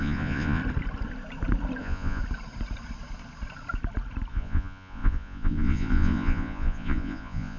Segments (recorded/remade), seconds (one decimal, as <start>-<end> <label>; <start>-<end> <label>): 0.0-0.6 remade; 0.6-1.8 recorded; 1.8-2.2 remade; 2.2-4.3 recorded; 4.3-7.6 remade